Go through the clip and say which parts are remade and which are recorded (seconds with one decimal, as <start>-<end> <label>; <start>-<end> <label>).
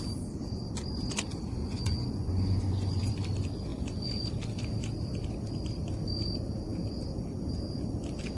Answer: 0.0-1.6 recorded; 1.6-3.1 remade; 3.1-3.7 recorded; 3.7-4.2 remade; 4.2-8.4 recorded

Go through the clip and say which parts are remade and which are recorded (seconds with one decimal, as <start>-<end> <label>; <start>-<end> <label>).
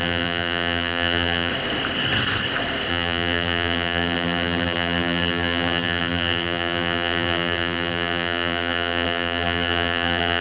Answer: 0.0-1.5 remade; 1.5-2.9 recorded; 2.9-10.4 remade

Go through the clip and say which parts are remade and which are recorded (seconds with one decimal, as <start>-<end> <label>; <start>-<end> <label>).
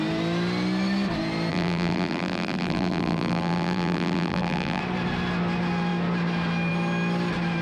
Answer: 0.0-1.5 recorded; 1.5-4.8 remade; 4.8-7.6 recorded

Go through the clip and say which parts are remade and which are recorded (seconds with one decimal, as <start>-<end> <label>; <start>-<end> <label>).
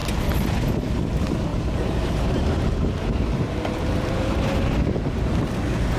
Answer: 0.0-1.5 recorded; 1.5-5.1 remade; 5.1-6.0 recorded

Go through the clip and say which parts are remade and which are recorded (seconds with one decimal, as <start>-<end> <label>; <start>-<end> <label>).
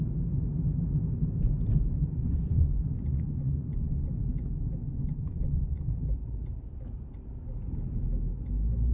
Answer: 0.0-2.2 recorded; 2.2-4.1 remade; 4.1-4.8 recorded; 4.8-5.8 remade; 5.8-8.9 recorded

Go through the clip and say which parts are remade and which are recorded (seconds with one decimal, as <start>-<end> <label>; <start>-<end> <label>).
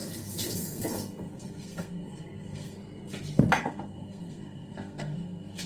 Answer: 0.0-2.8 remade; 2.8-3.6 recorded; 3.6-5.7 remade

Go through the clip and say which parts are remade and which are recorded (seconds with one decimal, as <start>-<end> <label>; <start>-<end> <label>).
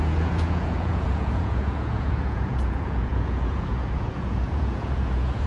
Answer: 0.0-5.5 remade